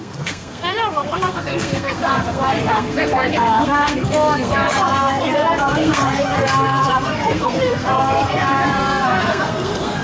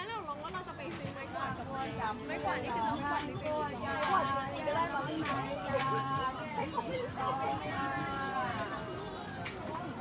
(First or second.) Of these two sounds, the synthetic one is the first